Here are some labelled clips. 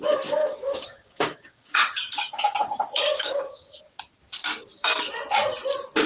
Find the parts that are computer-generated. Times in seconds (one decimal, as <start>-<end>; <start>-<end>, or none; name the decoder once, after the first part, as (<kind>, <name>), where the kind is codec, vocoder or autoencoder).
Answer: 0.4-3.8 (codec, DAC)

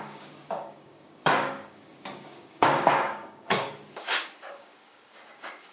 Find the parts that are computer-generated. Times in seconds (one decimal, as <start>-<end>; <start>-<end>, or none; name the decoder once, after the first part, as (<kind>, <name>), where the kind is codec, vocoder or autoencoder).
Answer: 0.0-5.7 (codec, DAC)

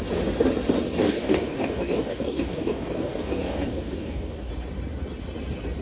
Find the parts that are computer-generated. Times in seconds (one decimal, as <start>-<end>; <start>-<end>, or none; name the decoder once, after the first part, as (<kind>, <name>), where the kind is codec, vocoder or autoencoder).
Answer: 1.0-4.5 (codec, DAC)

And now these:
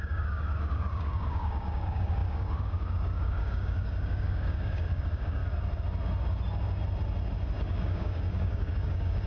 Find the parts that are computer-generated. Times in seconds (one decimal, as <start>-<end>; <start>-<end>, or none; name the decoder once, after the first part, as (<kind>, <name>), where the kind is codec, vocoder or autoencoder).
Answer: 0.0-5.4 (codec, DAC); 7.6-9.3

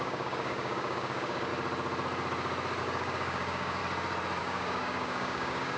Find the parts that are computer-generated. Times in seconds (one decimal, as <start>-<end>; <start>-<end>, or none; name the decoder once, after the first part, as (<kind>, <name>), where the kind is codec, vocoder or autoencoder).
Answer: 0.0-1.5 (codec, DAC); 2.8-3.8; 4.4-5.8

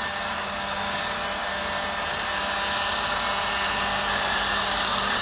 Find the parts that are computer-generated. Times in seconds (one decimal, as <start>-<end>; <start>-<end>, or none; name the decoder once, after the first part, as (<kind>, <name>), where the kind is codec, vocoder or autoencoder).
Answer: 0.0-1.5 (codec, DAC); 4.6-5.2

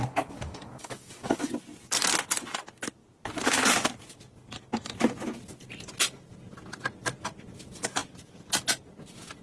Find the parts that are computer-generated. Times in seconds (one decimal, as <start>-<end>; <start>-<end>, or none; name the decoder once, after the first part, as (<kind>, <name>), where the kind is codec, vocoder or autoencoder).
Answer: 0.0-1.5 (codec, DAC)